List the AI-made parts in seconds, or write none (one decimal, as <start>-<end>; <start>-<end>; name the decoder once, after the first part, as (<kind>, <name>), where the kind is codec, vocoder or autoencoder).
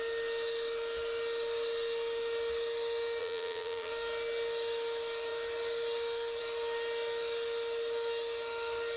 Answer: 3.2-3.9 (vocoder, BigVGAN v2)